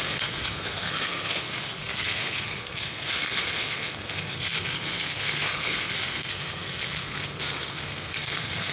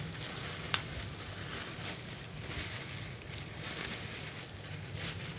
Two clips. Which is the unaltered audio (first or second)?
second